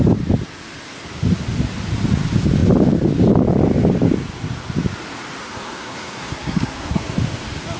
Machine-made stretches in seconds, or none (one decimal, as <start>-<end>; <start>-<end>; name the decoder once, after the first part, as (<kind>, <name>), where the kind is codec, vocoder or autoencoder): 5.4-7.0 (codec, SNAC)